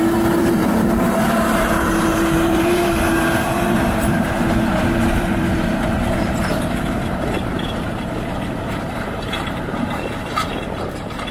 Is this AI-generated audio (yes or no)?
yes